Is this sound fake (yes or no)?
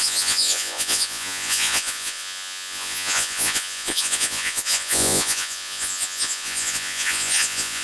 yes